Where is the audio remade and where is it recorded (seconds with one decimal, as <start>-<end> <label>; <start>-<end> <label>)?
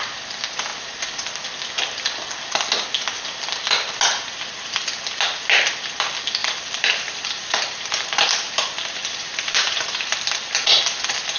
0.0-6.4 recorded; 6.4-10.8 remade; 10.8-11.4 recorded